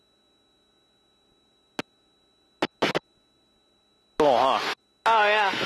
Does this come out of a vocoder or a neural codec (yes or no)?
no